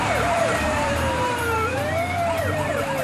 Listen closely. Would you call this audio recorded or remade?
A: remade